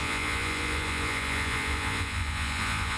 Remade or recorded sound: remade